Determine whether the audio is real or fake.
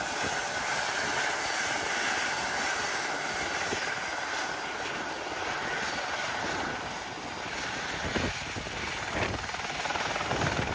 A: real